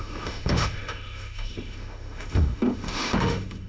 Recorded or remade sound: remade